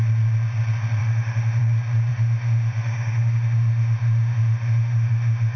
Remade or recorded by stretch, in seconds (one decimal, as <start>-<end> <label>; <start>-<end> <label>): 0.0-1.0 recorded; 1.0-1.6 remade; 1.6-2.1 recorded; 2.1-5.6 remade